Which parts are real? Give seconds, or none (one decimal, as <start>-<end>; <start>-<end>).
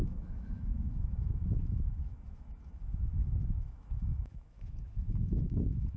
none